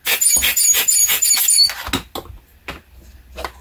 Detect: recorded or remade recorded